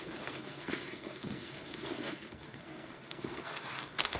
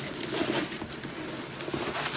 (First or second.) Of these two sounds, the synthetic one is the first